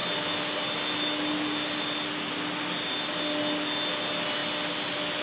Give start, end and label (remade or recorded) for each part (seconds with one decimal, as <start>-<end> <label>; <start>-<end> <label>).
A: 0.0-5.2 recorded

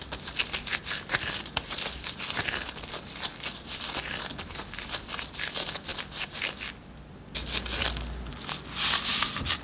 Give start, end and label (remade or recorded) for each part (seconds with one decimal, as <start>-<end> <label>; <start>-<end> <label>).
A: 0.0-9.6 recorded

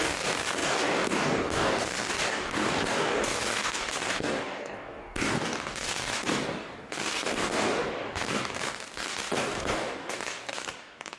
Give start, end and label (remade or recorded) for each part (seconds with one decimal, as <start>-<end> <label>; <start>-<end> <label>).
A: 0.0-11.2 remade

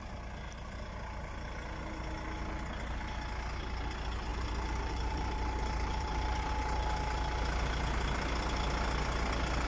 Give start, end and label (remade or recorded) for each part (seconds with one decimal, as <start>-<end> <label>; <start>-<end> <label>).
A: 0.0-4.3 recorded; 4.3-6.5 remade; 6.5-9.7 recorded